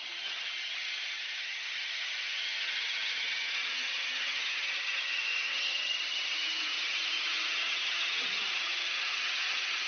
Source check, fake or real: fake